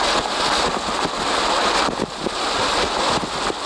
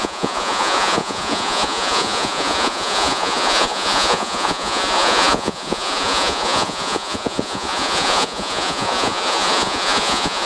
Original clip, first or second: first